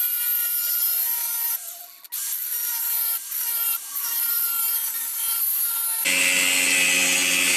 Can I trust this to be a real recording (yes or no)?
yes